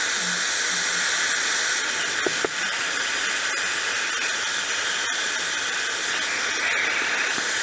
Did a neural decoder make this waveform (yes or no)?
no